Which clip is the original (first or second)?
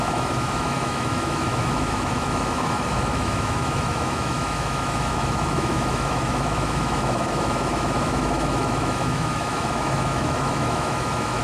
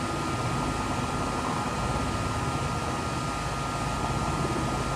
second